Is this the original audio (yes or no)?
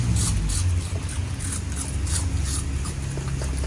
yes